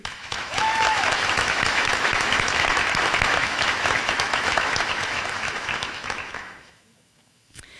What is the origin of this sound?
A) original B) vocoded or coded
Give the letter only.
B